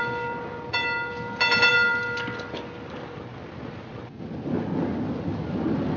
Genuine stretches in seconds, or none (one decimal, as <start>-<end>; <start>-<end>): 0.0-6.0